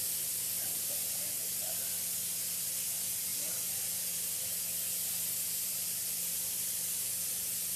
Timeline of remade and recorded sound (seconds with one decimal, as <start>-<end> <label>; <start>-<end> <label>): 0.0-7.8 recorded

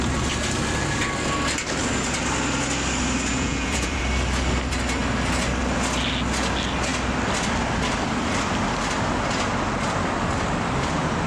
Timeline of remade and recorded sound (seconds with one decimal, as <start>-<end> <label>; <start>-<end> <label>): 0.0-3.3 recorded; 3.3-4.0 remade; 4.0-11.3 recorded

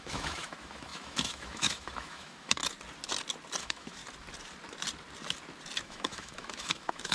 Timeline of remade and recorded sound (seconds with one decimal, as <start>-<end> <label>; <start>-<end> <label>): 0.0-2.6 remade; 2.6-3.6 recorded; 3.6-4.0 remade; 4.0-5.8 recorded; 5.8-7.1 remade

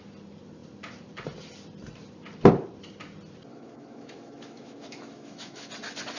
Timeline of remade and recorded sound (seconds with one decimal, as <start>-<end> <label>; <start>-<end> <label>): 0.0-3.5 recorded; 3.5-5.7 remade; 5.7-6.2 recorded

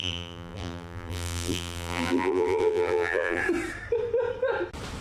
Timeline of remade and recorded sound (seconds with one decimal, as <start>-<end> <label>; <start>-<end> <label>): 0.0-3.4 remade; 3.4-5.0 recorded

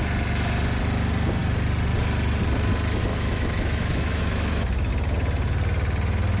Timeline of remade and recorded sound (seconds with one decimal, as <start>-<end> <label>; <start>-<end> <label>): 0.0-3.1 recorded; 3.1-4.9 remade; 4.9-6.4 recorded